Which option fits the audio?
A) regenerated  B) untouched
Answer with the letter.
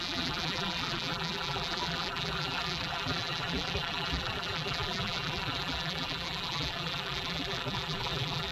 A